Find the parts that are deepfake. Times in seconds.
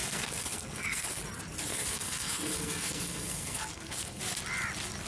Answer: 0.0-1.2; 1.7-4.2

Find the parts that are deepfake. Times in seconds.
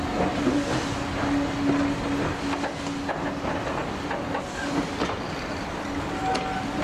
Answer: none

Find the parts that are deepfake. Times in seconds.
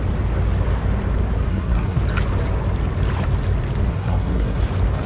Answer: 1.5-2.0; 3.9-4.6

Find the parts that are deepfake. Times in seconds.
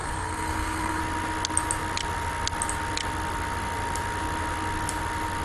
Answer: 0.0-1.0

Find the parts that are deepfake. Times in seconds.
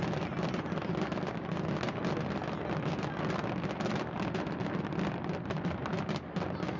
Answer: none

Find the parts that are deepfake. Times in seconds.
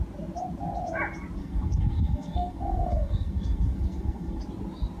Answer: 1.4-4.4